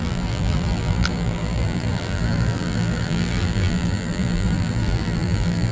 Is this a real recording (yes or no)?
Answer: no